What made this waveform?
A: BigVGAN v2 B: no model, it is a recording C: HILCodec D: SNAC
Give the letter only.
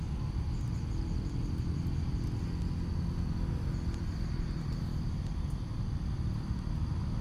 B